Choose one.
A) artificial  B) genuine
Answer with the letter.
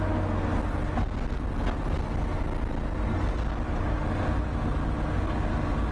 B